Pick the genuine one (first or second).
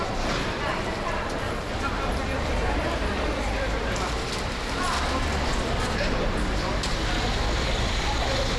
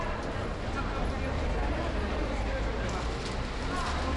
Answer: second